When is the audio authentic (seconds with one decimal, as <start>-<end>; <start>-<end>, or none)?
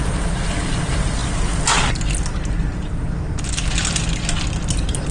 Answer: 0.0-5.1